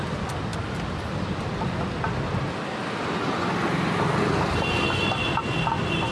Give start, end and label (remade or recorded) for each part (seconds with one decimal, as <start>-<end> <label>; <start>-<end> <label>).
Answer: 0.0-6.1 recorded